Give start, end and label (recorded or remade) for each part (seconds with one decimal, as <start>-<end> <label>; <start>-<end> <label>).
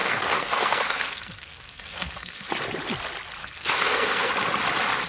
0.0-2.5 remade; 2.5-3.4 recorded; 3.4-4.3 remade; 4.3-5.1 recorded